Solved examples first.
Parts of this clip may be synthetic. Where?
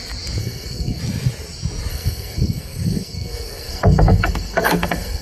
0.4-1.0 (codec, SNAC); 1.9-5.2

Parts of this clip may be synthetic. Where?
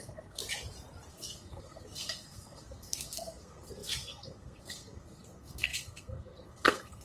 0.0-0.4 (codec, SNAC); 1.1-7.0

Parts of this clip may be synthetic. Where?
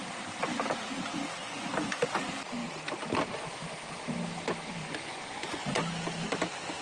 1.4-2.0 (vocoder, Vocos); 4.8-5.8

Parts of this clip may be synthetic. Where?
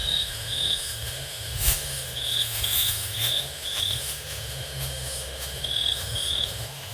0.0-6.9 (autoencoder, DAC-VAE)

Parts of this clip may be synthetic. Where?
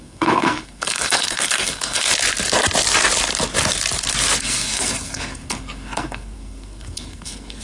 0.0-2.1 (codec, SNAC); 4.4-7.6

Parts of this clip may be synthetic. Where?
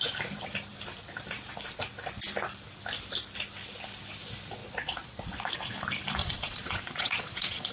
4.6-5.5 (vocoder, Vocos); 6.2-7.7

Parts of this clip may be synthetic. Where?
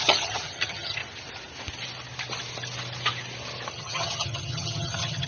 0.0-1.0 (vocoder, HiFi-GAN); 3.7-5.3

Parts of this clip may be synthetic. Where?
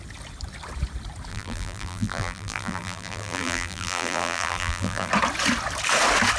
1.3-5.1 (vocoder, BigVGAN v2)